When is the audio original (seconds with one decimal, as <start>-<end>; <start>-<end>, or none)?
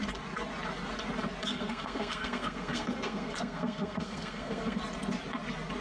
0.0-1.5; 4.8-5.8